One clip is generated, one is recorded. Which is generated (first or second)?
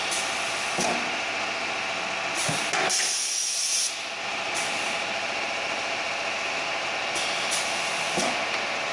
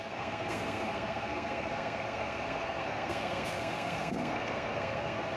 second